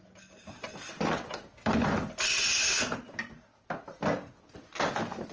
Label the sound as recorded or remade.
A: recorded